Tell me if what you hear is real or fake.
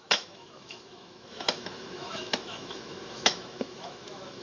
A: fake